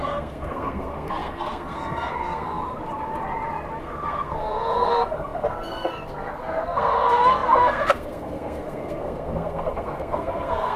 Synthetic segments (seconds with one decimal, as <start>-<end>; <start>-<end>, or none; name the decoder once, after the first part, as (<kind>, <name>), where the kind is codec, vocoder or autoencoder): 0.0-2.6 (codec, SNAC); 3.8-10.8